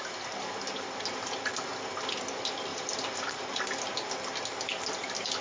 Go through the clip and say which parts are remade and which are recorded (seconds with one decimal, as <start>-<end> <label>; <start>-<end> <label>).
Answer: 0.0-2.7 recorded; 2.7-3.6 remade; 3.6-5.4 recorded